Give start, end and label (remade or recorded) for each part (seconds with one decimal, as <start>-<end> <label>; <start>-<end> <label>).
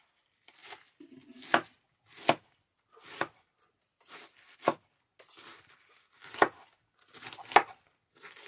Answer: 0.0-0.6 recorded; 0.6-1.2 remade; 1.2-8.5 recorded